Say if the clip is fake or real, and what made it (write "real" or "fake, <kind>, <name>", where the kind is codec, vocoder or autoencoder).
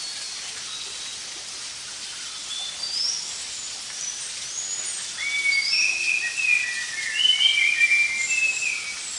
real